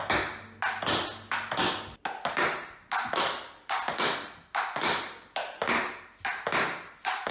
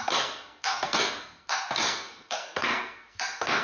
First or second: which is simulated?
second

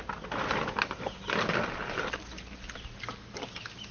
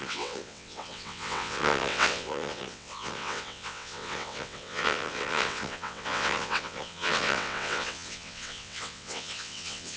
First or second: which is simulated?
second